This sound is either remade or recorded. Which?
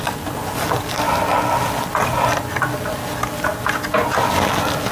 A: recorded